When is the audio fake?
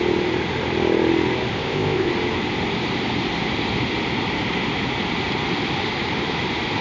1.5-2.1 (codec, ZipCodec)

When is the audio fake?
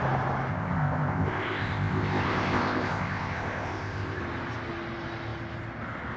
0.5-4.2 (codec, ZipCodec)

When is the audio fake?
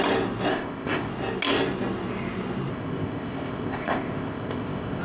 0.5-1.1 (codec, ZipCodec); 2.7-5.0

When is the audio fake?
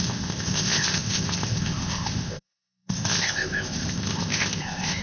0.0-5.0 (codec, ZipCodec)